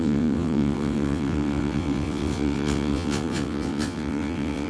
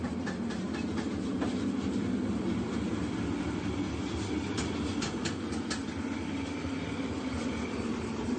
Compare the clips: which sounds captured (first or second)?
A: second